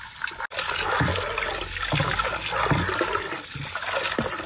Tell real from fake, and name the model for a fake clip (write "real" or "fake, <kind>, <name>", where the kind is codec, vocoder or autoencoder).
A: real